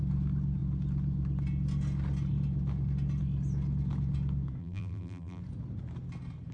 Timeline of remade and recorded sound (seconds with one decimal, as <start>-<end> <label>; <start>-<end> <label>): 0.0-4.6 recorded; 4.6-5.4 remade; 5.4-6.5 recorded